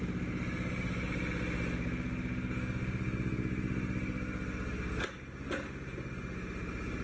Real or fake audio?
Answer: real